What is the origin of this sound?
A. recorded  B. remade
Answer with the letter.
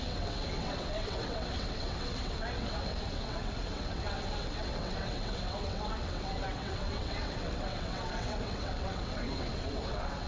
B